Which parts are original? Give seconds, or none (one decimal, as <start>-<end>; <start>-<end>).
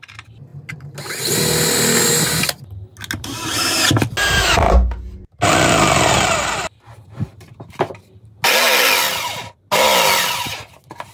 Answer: 0.0-11.1